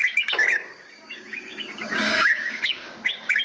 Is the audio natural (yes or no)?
no